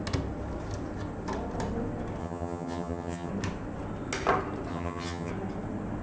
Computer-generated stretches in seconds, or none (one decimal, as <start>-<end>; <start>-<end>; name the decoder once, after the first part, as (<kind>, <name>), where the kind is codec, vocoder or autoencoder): 2.2-3.3 (vocoder, HiFi-GAN); 4.7-5.3